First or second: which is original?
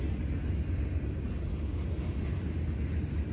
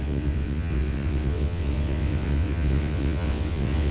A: first